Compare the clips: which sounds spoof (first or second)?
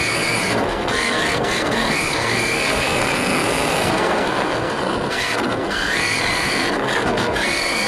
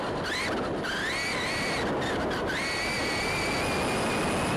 first